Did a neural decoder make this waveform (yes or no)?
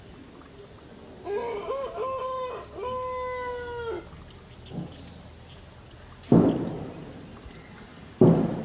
no